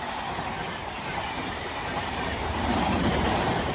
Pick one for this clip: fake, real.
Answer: fake